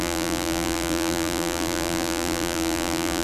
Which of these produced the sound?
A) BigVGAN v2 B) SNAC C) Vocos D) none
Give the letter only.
A